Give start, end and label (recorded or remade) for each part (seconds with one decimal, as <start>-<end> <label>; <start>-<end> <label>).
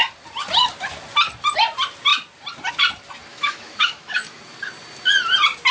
0.0-3.3 recorded; 3.3-4.4 remade; 4.4-5.7 recorded